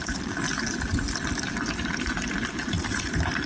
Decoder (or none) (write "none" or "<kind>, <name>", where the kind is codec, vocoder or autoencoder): none